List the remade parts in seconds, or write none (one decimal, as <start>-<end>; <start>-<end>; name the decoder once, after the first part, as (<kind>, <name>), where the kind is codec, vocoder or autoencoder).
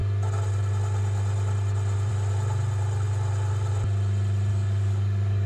4.5-5.5 (codec, DAC)